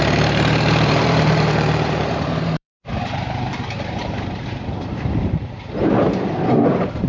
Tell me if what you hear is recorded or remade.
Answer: remade